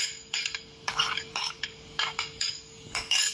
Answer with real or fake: fake